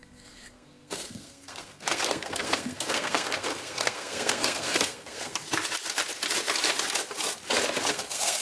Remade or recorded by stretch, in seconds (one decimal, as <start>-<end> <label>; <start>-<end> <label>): 0.0-5.4 remade; 5.4-7.9 recorded; 7.9-8.4 remade